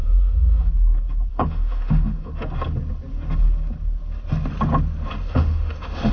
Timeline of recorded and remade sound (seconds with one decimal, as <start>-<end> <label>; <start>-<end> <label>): 0.0-0.7 remade; 0.7-1.3 recorded; 1.3-2.3 remade; 2.3-5.2 recorded; 5.2-6.1 remade